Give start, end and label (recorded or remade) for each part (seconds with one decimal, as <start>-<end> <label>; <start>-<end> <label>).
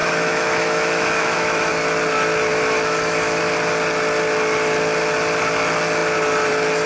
0.0-1.7 remade; 1.7-2.5 recorded; 2.5-3.4 remade; 3.4-6.9 recorded